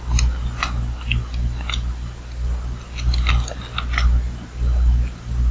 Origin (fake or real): real